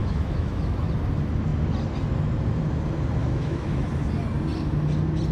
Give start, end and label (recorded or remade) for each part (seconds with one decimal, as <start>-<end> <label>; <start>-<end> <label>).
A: 0.0-0.9 remade; 0.9-3.2 recorded; 3.2-3.9 remade; 3.9-5.3 recorded